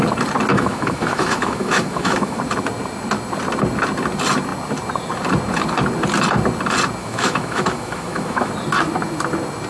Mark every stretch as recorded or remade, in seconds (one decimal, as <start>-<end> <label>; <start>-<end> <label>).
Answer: 0.0-0.5 recorded; 0.5-2.4 remade; 2.4-7.0 recorded; 7.0-8.5 remade; 8.5-9.7 recorded